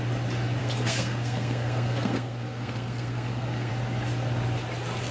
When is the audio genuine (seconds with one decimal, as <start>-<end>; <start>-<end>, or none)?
0.0-0.6; 3.7-5.1